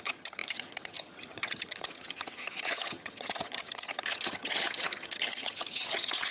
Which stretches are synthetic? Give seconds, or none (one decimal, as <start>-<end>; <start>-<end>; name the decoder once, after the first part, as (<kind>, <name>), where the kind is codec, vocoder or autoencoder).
0.0-6.3 (vocoder, HiFi-GAN)